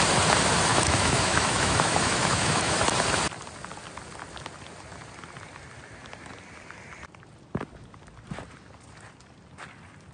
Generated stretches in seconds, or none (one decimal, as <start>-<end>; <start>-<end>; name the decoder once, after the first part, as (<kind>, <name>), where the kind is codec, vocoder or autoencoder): 0.7-2.8 (autoencoder, DAC-VAE)